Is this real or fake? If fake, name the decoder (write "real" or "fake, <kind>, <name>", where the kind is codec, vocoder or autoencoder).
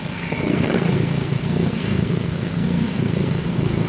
fake, codec, SNAC